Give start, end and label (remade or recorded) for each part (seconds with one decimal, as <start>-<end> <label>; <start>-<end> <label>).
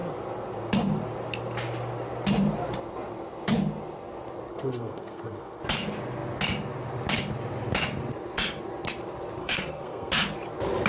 0.0-4.5 recorded; 4.5-5.6 remade; 5.6-9.4 recorded; 9.4-10.1 remade; 10.1-10.9 recorded